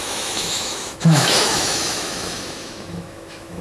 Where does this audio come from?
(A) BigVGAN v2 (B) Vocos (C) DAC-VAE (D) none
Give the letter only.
C